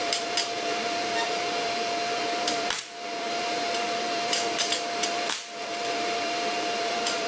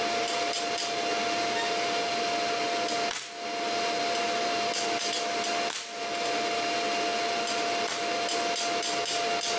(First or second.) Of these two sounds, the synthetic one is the first